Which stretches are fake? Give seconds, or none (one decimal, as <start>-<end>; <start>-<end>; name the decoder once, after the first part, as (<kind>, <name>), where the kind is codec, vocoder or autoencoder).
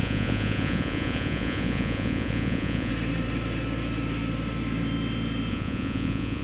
0.0-2.9 (vocoder, Vocos); 5.5-6.4